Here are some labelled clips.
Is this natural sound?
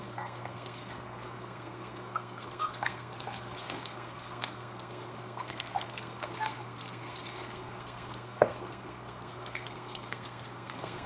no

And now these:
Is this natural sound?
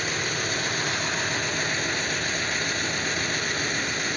yes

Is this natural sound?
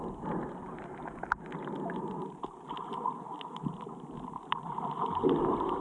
yes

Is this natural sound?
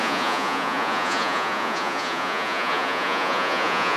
no